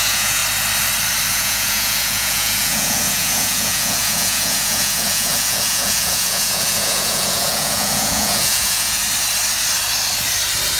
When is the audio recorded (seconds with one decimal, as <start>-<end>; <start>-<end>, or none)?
0.4-1.3; 9.0-10.8